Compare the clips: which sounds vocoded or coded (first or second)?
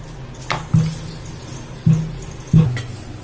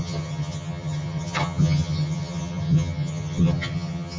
second